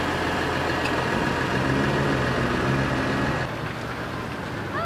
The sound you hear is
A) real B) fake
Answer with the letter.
A